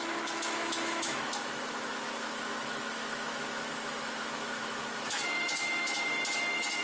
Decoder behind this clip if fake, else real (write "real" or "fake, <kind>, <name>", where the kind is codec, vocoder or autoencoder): fake, autoencoder, DAC-VAE